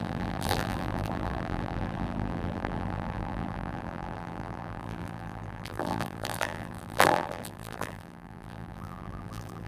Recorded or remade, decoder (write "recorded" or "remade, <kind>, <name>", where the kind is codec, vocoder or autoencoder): remade, vocoder, BigVGAN v2